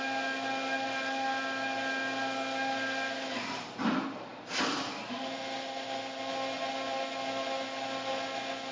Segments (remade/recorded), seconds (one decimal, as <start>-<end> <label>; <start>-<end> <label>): 0.0-8.7 recorded